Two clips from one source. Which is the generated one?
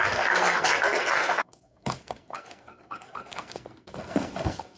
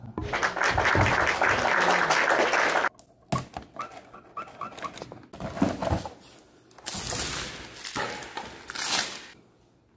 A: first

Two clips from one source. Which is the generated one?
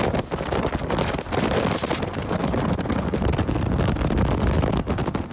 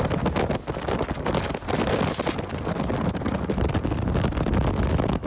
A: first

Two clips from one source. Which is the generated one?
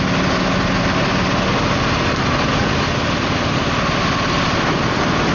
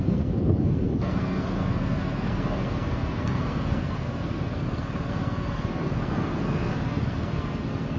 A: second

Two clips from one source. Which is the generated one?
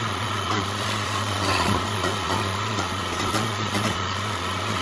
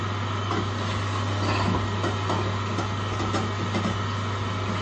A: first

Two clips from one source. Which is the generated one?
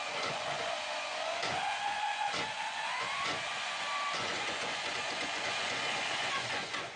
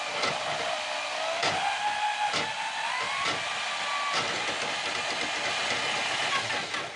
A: first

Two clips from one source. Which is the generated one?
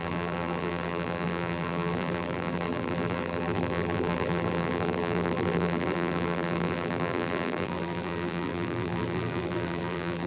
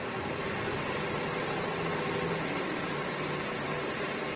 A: first